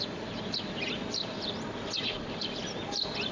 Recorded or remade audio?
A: remade